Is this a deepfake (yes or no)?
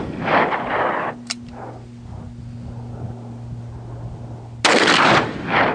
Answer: no